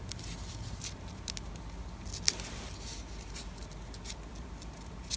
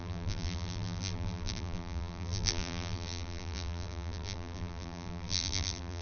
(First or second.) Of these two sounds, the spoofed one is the second